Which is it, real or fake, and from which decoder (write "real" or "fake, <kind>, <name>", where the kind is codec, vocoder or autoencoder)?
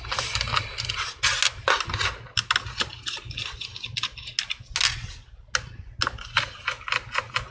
real